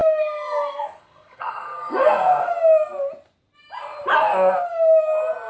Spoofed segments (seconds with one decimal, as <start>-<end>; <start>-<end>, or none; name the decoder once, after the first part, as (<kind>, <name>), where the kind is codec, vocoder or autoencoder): 0.0-2.5 (codec, SNAC)